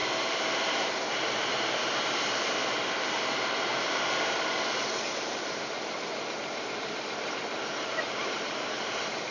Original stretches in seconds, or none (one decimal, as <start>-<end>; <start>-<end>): none